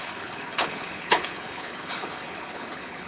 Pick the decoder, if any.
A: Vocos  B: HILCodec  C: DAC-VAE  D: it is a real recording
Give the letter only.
B